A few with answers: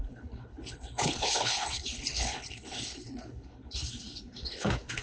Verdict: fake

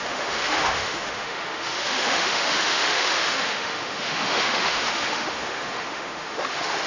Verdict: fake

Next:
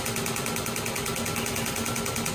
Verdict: real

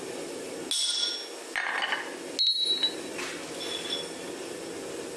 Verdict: real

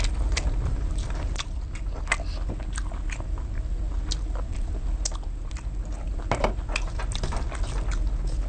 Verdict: real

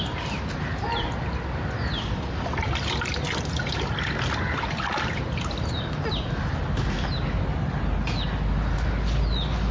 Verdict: real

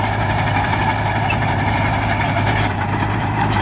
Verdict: fake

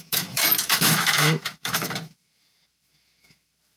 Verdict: fake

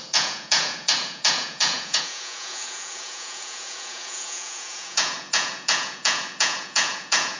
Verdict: fake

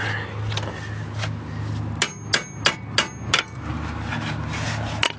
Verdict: real